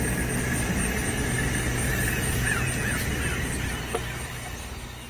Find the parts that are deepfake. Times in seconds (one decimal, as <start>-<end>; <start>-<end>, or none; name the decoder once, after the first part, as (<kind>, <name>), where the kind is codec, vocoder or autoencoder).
1.9-3.2 (vocoder, Vocos)